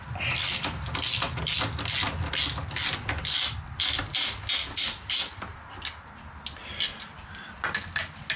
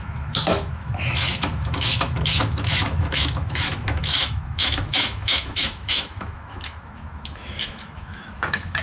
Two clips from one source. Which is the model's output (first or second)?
second